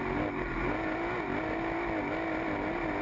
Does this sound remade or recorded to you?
recorded